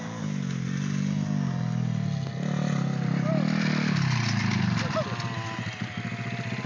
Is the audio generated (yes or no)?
no